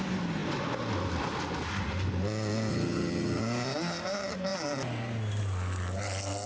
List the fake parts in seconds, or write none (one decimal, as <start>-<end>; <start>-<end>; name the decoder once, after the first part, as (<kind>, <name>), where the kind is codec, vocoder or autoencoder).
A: 2.7-3.4 (vocoder, HiFi-GAN)